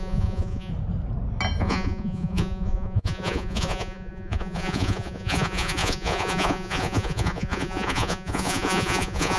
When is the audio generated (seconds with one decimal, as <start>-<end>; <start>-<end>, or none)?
0.0-0.7; 1.6-9.4